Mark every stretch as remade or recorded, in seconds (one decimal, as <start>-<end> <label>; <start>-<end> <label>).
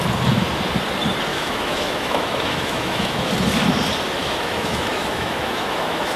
0.0-1.3 recorded; 1.3-3.3 remade; 3.3-4.2 recorded; 4.2-6.2 remade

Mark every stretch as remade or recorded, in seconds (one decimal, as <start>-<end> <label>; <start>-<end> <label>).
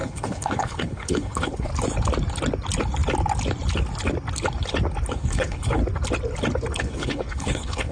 0.0-1.7 remade; 1.7-5.1 recorded; 5.1-5.8 remade; 5.8-6.8 recorded; 6.8-7.9 remade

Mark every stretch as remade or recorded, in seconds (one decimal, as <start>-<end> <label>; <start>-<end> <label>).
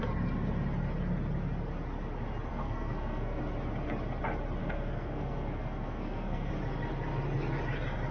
0.0-2.5 recorded; 2.5-3.4 remade; 3.4-4.6 recorded; 4.6-6.5 remade; 6.5-8.1 recorded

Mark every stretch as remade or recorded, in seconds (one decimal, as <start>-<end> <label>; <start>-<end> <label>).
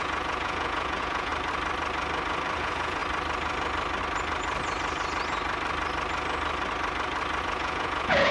0.0-1.3 remade; 1.3-2.6 recorded; 2.6-3.0 remade; 3.0-7.4 recorded; 7.4-8.3 remade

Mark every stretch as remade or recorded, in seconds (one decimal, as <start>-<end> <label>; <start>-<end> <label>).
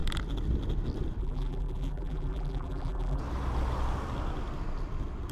0.0-1.2 recorded; 1.2-3.2 remade; 3.2-5.3 recorded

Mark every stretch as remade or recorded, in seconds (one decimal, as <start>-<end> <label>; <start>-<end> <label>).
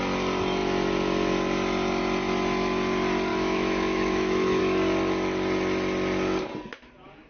0.0-3.3 recorded; 3.3-4.6 remade; 4.6-7.3 recorded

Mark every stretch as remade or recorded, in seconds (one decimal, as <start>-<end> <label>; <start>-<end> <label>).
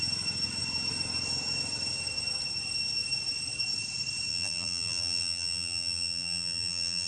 0.0-4.3 recorded; 4.3-7.1 remade